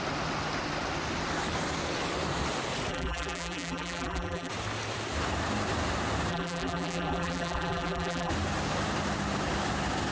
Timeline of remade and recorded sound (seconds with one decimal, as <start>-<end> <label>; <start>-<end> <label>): 0.0-2.9 recorded; 2.9-4.5 remade; 4.5-6.3 recorded; 6.3-8.3 remade; 8.3-10.1 recorded